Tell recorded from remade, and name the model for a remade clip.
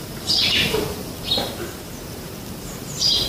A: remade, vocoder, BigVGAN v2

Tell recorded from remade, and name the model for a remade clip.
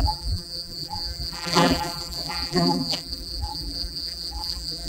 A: remade, vocoder, BigVGAN v2